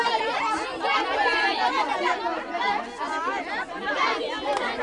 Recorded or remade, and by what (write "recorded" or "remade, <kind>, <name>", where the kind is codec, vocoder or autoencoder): recorded